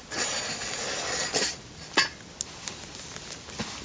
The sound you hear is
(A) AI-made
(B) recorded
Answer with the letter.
B